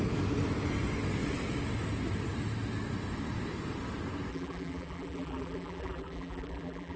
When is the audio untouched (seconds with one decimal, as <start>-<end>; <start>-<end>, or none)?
0.0-4.3